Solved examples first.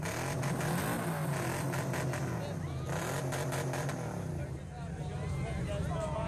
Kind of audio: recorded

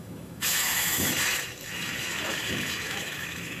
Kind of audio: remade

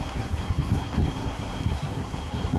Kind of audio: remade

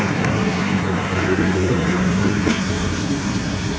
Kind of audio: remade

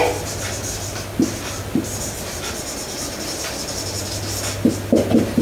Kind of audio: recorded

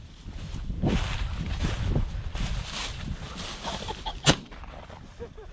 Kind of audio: remade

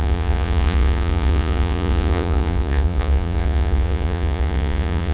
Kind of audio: remade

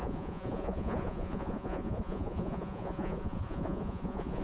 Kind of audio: remade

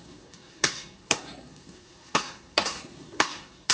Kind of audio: remade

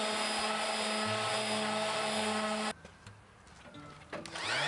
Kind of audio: recorded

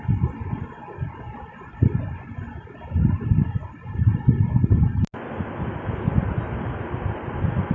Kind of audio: recorded